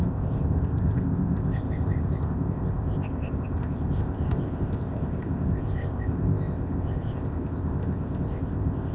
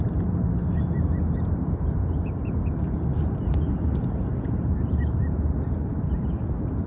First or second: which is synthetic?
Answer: first